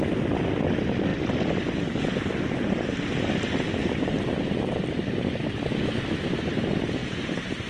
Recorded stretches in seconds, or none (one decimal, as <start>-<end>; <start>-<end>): 0.0-3.8; 4.8-7.7